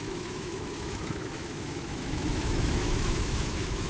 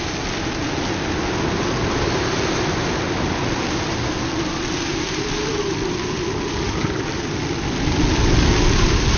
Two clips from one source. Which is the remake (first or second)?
first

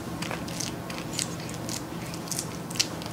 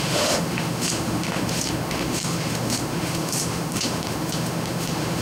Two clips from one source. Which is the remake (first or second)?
second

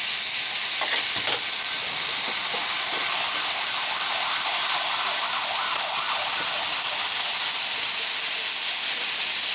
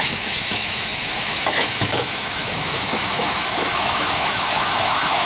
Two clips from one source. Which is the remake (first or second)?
second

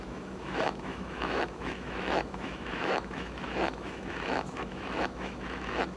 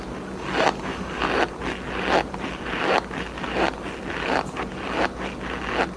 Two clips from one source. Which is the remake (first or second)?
first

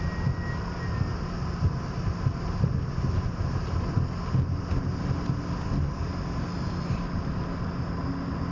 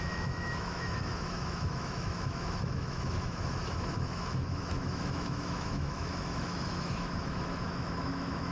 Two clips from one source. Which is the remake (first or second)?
second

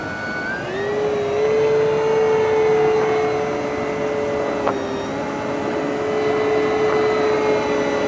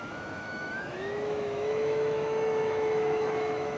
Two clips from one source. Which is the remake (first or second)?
second